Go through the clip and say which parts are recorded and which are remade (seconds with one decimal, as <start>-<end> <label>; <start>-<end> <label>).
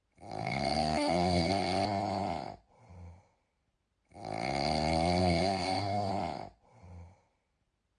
0.0-0.4 recorded; 0.4-1.5 remade; 1.5-5.2 recorded; 5.2-6.1 remade; 6.1-8.0 recorded